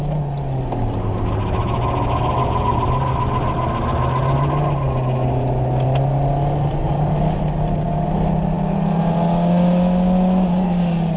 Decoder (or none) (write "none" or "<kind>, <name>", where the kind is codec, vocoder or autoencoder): none